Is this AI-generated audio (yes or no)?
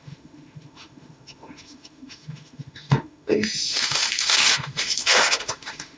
yes